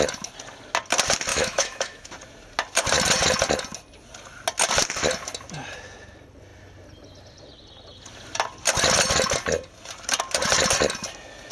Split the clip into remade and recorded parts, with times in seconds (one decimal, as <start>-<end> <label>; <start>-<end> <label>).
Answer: 0.0-1.3 recorded; 1.3-2.1 remade; 2.1-11.5 recorded